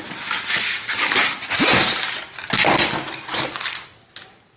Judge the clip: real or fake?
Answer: real